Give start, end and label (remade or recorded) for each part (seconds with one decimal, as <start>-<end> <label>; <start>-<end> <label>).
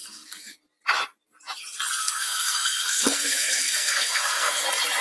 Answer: 0.0-0.6 remade; 0.6-2.0 recorded; 2.0-4.6 remade; 4.6-5.0 recorded